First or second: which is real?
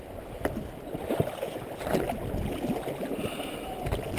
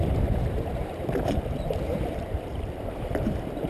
first